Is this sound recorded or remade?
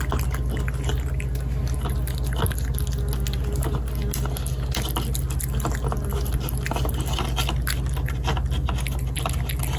recorded